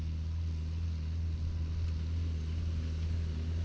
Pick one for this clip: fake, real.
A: real